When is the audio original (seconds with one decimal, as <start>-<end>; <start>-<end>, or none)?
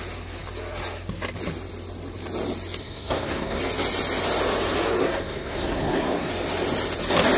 0.0-2.8; 3.6-5.0; 6.3-7.4